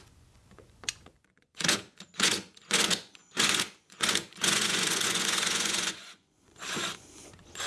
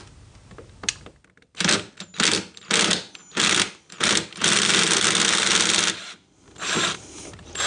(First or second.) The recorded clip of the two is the second